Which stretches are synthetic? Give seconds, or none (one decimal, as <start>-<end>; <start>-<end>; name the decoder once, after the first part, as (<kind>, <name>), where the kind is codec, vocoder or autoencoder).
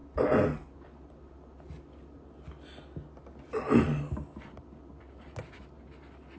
none